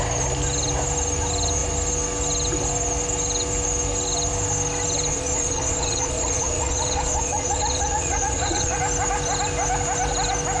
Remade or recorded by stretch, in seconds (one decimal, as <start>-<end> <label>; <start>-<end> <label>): 0.0-5.1 recorded; 5.1-8.8 remade; 8.8-10.6 recorded